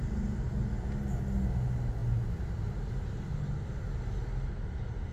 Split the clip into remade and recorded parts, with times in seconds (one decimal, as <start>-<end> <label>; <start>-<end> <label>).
0.0-5.1 recorded